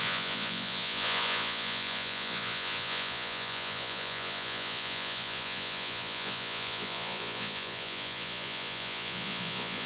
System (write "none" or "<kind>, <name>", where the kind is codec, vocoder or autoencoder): vocoder, Vocos